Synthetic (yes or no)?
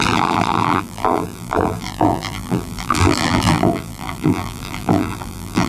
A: yes